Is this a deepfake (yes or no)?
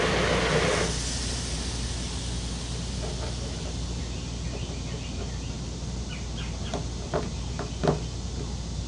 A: no